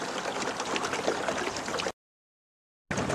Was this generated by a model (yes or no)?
no